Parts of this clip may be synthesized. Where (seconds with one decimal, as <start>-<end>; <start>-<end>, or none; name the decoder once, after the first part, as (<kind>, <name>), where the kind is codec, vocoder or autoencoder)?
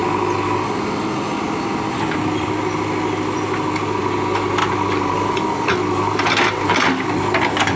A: none